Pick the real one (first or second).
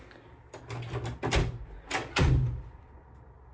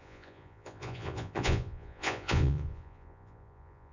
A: first